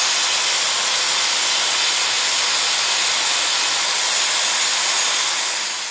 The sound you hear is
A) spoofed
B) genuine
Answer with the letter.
B